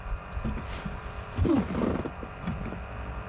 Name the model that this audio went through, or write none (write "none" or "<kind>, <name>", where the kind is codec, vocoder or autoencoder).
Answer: vocoder, BigVGAN v2